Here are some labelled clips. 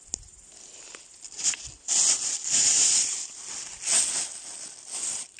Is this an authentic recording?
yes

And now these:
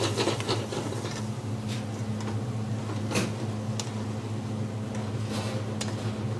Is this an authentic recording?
yes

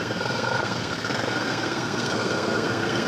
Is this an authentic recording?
no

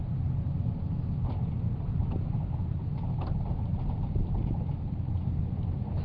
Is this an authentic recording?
yes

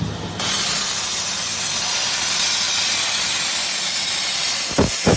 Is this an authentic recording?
yes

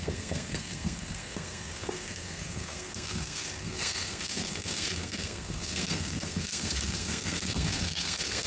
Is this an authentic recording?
no